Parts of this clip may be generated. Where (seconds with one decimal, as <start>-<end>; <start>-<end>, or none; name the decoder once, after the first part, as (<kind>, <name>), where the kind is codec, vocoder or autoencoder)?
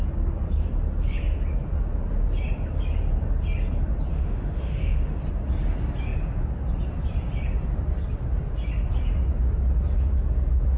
4.1-5.2 (autoencoder, DAC-VAE)